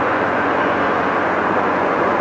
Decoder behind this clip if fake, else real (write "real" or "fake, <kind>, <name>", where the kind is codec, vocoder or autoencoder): fake, vocoder, Vocos